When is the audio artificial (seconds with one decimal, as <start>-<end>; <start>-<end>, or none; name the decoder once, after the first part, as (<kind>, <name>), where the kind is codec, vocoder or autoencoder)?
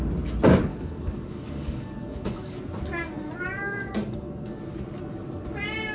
0.7-2.6 (codec, DAC); 3.6-4.6